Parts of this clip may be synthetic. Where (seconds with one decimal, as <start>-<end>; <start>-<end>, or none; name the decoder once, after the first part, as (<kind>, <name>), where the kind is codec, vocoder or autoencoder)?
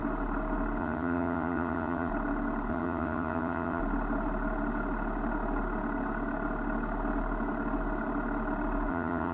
0.8-2.1 (vocoder, HiFi-GAN); 2.7-3.8; 8.9-9.3